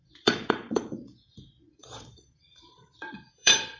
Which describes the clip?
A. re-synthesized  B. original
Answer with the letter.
A